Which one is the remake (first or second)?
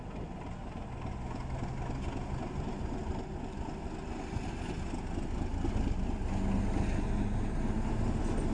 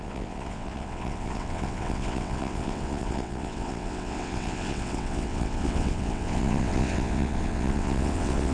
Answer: second